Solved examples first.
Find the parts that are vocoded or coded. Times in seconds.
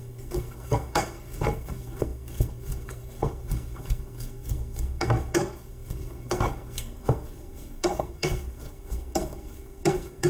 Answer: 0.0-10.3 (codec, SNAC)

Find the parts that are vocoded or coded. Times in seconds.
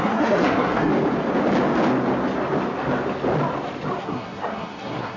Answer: 0.0-0.9 (codec, SNAC); 4.0-5.2